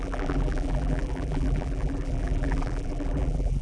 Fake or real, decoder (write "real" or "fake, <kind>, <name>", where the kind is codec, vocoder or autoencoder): fake, vocoder, BigVGAN v2